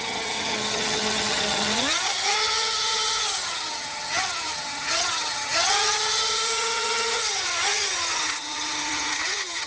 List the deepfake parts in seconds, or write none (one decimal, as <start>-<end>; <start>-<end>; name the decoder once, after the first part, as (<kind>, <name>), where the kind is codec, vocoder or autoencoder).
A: 0.0-9.7 (vocoder, HiFi-GAN)